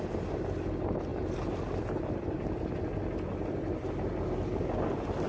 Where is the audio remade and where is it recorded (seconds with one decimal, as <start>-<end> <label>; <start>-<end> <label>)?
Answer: 0.0-5.3 recorded